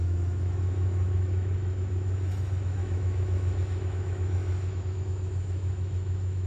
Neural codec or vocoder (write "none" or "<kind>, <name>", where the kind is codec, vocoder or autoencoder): autoencoder, DAC-VAE